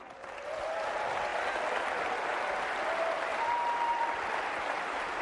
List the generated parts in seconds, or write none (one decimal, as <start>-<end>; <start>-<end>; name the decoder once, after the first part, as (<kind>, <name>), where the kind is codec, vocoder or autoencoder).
0.0-1.3 (vocoder, BigVGAN v2); 4.4-5.2